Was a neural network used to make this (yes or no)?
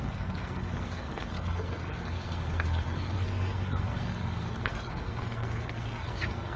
yes